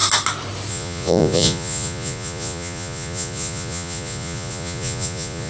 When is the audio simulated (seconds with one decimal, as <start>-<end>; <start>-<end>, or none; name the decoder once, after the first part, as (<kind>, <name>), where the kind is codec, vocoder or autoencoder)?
0.7-5.5 (vocoder, Vocos)